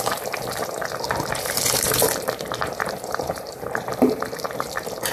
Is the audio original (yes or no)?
no